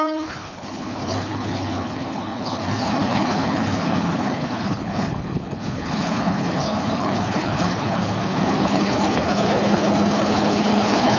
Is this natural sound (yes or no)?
no